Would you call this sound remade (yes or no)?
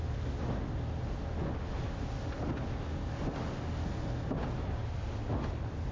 no